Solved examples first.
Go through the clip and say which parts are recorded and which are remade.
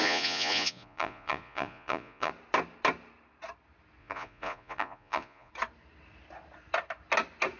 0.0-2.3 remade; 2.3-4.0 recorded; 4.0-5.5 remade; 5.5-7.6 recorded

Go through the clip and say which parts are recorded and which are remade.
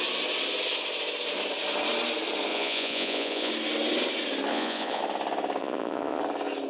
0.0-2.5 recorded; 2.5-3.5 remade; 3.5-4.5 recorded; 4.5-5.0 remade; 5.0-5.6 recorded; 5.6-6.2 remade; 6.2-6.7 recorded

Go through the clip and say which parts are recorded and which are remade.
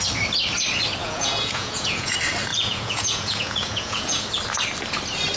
0.0-1.0 recorded; 1.0-2.1 remade; 2.1-2.5 recorded; 2.5-4.2 remade; 4.2-5.4 recorded